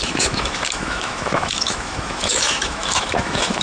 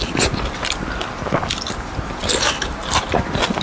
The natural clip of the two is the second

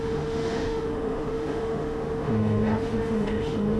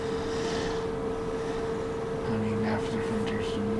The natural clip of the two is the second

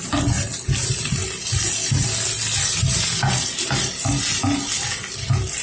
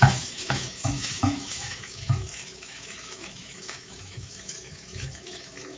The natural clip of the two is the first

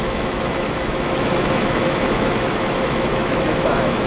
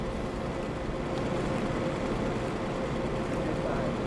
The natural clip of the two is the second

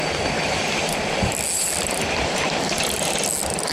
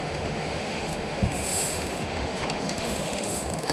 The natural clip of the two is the first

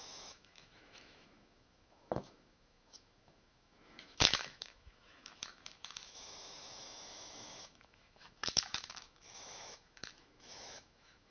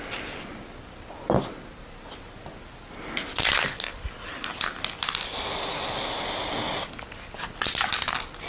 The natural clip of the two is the second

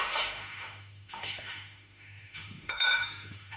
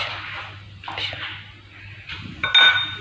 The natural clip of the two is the second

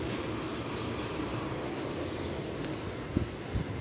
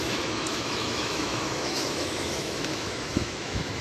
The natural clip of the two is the first